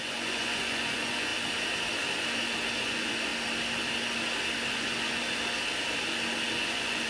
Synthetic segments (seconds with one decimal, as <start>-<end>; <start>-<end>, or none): 0.0-1.3; 2.8-3.3; 4.7-5.2; 6.5-7.1